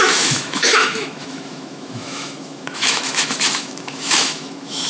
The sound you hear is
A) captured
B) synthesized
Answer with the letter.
B